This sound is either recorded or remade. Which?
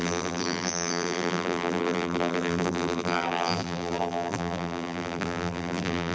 remade